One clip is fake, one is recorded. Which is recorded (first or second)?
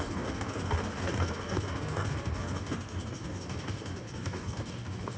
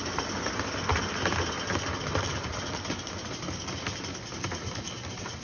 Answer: second